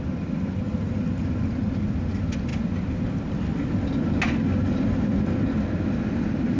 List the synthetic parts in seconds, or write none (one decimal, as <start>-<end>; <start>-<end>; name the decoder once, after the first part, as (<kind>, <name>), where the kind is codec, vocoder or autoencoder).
none